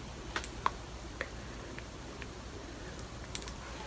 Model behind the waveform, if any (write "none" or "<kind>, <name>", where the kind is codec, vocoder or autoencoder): vocoder, BigVGAN v2